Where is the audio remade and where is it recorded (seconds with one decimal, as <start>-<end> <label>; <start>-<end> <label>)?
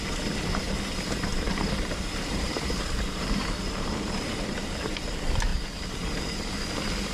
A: 0.0-1.3 recorded; 1.3-5.0 remade; 5.0-5.5 recorded; 5.5-6.1 remade; 6.1-7.1 recorded